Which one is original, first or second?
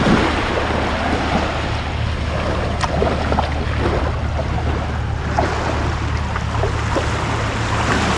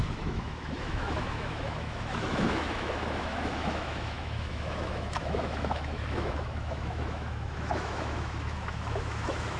first